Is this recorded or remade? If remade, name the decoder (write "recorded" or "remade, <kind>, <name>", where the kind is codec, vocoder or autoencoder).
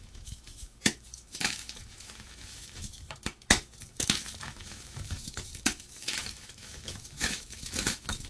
remade, autoencoder, DAC-VAE